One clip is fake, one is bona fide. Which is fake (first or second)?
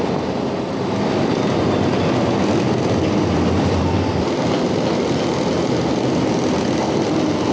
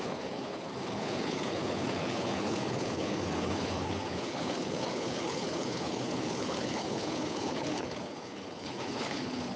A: second